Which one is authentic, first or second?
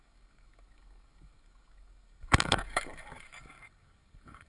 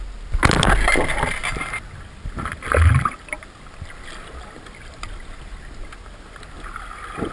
second